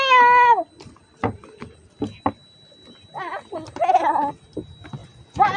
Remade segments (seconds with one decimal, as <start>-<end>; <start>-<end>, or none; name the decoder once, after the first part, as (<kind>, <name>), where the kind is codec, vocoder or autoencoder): 5.0-5.6 (vocoder, Vocos)